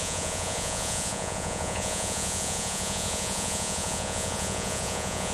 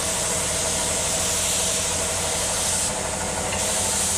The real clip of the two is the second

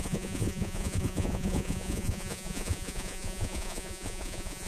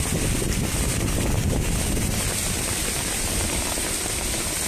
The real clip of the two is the second